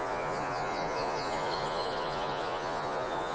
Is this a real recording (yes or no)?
no